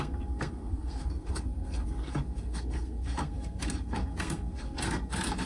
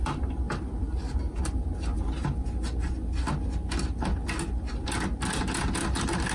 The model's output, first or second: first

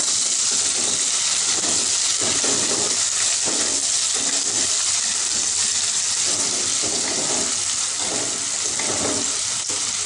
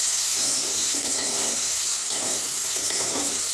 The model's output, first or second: second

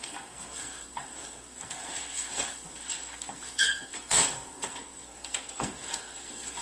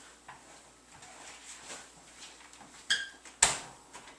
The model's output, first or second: first